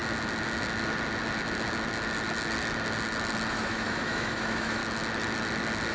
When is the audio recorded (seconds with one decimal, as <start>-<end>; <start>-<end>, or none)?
0.0-3.5; 4.8-5.9